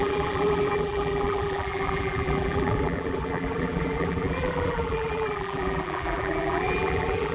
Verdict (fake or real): fake